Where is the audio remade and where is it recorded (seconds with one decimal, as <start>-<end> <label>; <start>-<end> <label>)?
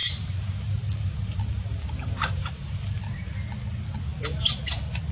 0.0-3.1 remade; 3.1-4.1 recorded; 4.1-4.6 remade; 4.6-5.1 recorded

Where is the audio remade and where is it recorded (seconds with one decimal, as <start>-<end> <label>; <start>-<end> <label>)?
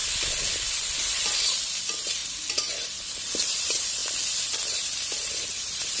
0.0-1.2 recorded; 1.2-2.2 remade; 2.2-3.6 recorded; 3.6-4.0 remade; 4.0-5.3 recorded; 5.3-6.0 remade